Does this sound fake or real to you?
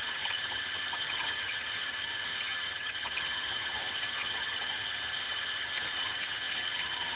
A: fake